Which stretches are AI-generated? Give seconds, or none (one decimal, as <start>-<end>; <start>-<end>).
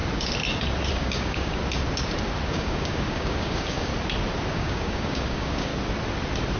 0.9-1.6; 2.5-3.9; 4.5-5.7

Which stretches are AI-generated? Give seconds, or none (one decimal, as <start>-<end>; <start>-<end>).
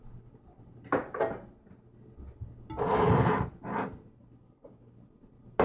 none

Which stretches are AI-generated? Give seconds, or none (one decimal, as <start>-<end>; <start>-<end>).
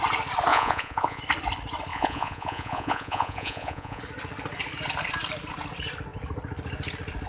0.5-1.2; 1.9-4.0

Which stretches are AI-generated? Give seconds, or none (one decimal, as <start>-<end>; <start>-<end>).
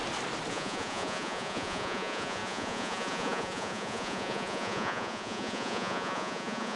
0.5-6.8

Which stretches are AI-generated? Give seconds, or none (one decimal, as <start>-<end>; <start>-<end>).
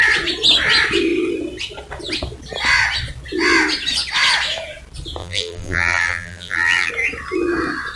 5.2-6.9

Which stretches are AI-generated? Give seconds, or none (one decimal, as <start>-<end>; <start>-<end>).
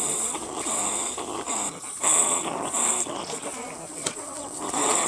0.0-0.8; 3.9-5.1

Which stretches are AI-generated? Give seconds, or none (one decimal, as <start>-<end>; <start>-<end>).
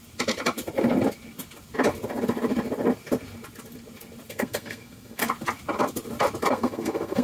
4.3-5.2; 6.5-7.2